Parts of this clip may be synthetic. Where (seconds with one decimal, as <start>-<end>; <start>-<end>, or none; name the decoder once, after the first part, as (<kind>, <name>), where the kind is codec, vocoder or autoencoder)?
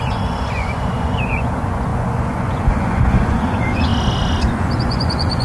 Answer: 0.0-3.9 (vocoder, Vocos); 4.4-5.4